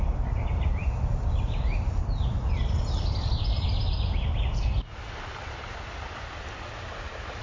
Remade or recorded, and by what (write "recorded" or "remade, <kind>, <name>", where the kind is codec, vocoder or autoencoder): recorded